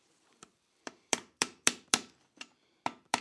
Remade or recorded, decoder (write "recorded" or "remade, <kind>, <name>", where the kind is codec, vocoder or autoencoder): remade, vocoder, BigVGAN v2